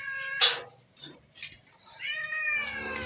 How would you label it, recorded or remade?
recorded